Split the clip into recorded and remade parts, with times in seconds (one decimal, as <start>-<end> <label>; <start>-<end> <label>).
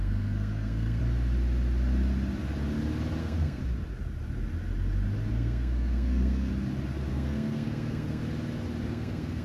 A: 0.0-1.0 remade; 1.0-3.2 recorded; 3.2-3.6 remade; 3.6-5.3 recorded; 5.3-6.5 remade; 6.5-7.1 recorded; 7.1-8.2 remade; 8.2-8.9 recorded; 8.9-9.4 remade